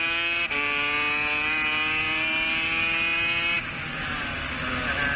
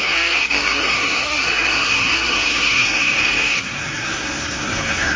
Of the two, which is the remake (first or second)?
second